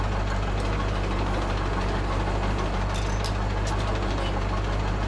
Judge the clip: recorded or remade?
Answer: recorded